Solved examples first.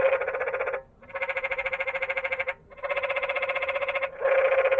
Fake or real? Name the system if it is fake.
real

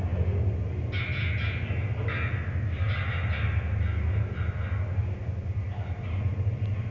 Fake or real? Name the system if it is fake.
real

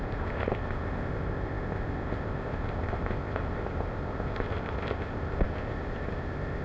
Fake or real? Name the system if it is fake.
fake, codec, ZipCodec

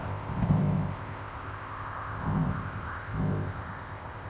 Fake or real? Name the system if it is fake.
fake, codec, ZipCodec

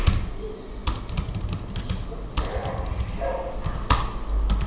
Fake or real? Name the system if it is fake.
real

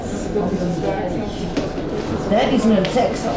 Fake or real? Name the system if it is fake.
real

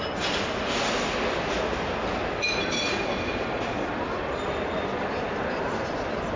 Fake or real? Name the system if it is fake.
real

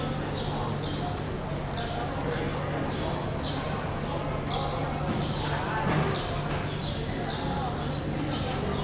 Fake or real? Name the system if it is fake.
real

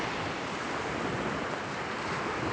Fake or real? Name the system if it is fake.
real